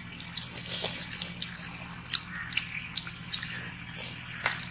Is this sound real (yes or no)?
yes